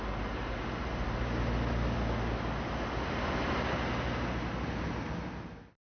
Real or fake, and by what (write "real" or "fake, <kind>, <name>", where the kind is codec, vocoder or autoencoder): real